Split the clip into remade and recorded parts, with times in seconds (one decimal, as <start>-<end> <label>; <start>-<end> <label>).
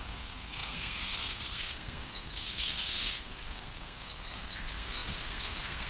0.0-5.9 remade